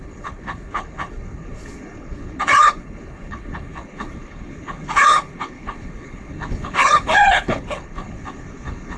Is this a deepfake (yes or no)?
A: yes